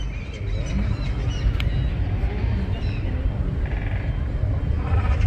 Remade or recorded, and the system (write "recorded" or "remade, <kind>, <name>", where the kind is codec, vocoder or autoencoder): recorded